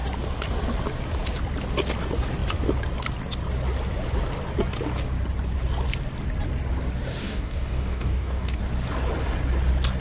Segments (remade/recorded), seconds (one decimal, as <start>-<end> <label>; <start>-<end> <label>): 0.0-7.2 recorded; 7.2-8.6 remade; 8.6-10.0 recorded